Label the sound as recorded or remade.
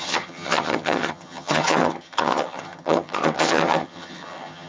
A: remade